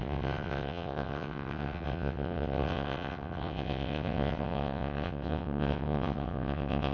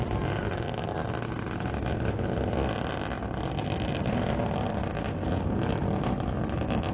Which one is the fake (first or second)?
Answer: first